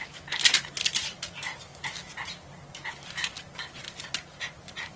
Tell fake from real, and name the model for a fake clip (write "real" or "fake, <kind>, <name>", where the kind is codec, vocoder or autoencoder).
real